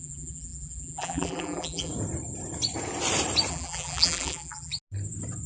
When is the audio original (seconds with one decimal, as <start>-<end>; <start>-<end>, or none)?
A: 1.9-3.5; 4.7-5.5